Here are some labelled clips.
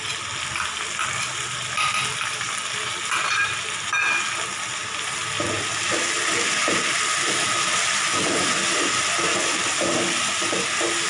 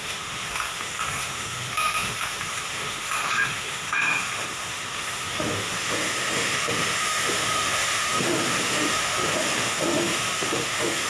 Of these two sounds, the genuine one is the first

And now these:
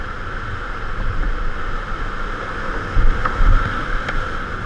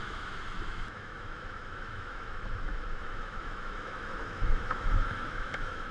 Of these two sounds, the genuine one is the first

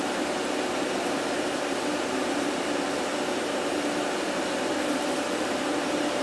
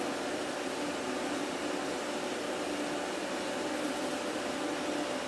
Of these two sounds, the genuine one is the second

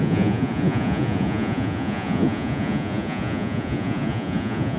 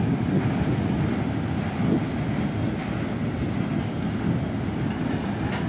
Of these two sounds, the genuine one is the second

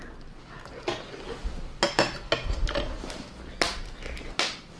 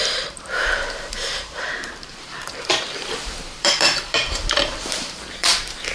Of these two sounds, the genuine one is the first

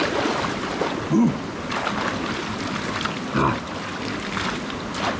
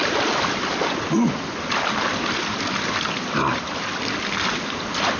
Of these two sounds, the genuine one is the first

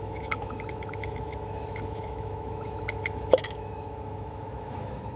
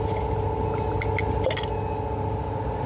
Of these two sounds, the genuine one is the second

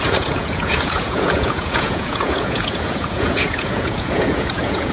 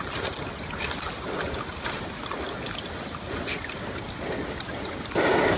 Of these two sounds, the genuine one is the second